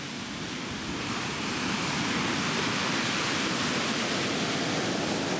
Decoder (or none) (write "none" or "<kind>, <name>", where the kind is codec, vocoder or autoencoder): none